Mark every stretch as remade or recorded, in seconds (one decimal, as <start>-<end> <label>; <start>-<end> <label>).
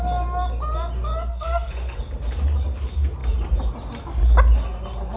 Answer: 0.0-1.3 recorded; 1.3-2.0 remade; 2.0-5.2 recorded